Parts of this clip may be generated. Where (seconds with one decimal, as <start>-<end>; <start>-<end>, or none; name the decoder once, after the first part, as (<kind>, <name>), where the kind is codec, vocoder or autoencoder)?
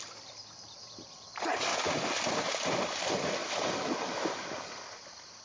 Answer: 1.7-2.3 (vocoder, BigVGAN v2); 3.4-4.8